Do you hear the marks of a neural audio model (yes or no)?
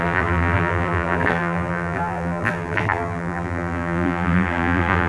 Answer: yes